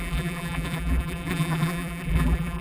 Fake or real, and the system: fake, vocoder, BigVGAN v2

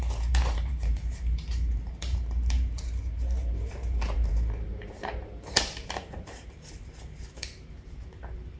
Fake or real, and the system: fake, vocoder, BigVGAN v2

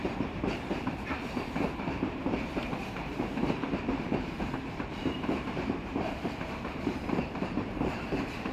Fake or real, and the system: fake, vocoder, BigVGAN v2